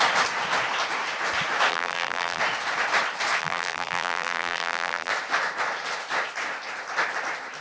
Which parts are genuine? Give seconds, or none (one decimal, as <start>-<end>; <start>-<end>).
0.0-1.7; 2.4-3.4; 5.1-7.6